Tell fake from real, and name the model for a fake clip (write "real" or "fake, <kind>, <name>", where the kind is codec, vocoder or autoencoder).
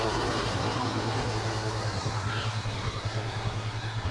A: fake, codec, SNAC